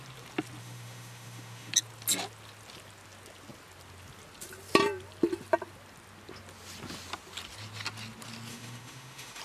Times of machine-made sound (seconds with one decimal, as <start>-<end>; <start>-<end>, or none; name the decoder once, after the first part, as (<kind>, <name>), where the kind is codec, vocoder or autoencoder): 0.6-1.7 (autoencoder, DAC-VAE); 8.5-9.4

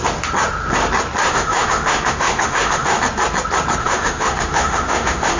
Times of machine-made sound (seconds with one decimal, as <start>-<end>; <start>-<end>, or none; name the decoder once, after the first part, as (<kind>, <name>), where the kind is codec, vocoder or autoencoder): 1.2-3.0 (autoencoder, DAC-VAE); 3.8-5.4